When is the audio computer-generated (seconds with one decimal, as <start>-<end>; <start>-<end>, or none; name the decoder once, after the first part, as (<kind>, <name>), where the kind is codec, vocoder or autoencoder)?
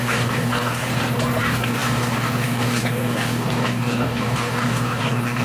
0.0-0.9 (codec, DAC); 1.4-5.4